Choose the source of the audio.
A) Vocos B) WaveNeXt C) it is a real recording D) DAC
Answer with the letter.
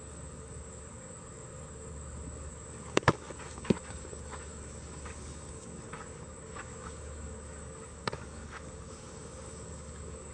D